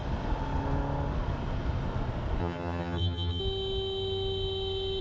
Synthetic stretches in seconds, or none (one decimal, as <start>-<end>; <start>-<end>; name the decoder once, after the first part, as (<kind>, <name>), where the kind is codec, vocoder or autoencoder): 2.4-3.4 (vocoder, HiFi-GAN)